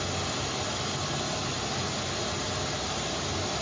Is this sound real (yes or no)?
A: yes